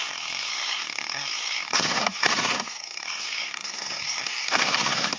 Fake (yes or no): yes